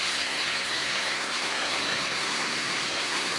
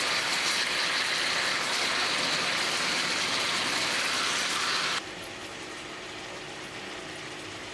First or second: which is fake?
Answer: first